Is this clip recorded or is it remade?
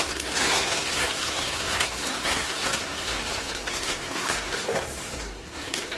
remade